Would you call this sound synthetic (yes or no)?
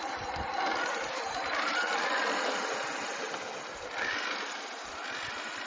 no